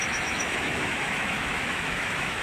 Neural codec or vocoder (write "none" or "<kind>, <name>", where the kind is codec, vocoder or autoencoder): autoencoder, DAC-VAE